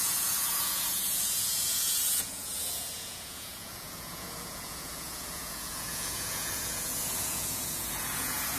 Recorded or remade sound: remade